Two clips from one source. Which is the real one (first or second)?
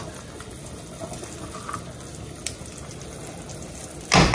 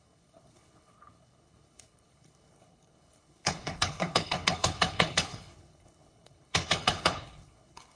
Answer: first